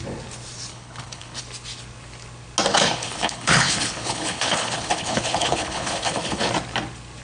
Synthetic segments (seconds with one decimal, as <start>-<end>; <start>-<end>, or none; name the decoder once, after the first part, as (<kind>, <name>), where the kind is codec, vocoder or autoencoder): 0.7-1.4 (codec, HILCodec); 2.7-6.5